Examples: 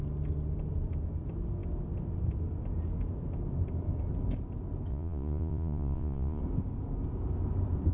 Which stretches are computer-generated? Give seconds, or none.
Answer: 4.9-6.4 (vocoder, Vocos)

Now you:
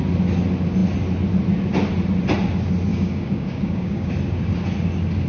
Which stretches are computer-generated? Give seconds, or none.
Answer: 2.9-4.1 (codec, DAC)

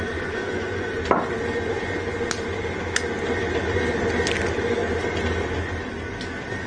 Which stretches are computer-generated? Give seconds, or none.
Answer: 0.0-1.0 (vocoder, Vocos)